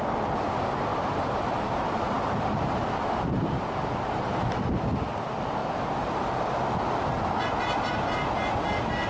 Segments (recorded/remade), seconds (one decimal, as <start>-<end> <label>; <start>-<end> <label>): 0.0-0.9 recorded; 0.9-4.2 remade; 4.2-9.1 recorded